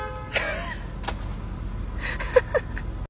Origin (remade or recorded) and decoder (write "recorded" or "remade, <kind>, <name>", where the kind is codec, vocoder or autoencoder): recorded